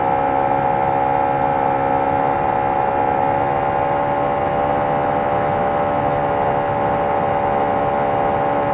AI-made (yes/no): no